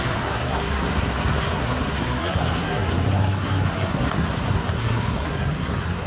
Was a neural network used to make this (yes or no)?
yes